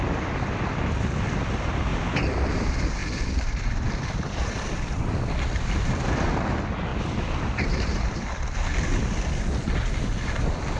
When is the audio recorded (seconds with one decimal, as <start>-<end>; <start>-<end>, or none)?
0.0-6.9; 8.4-10.8